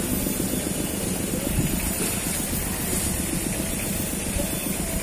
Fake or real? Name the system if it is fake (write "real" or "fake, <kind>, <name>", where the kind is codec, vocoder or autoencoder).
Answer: real